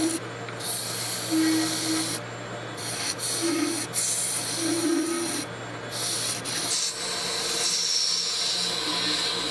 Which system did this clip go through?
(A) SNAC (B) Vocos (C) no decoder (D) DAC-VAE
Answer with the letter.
C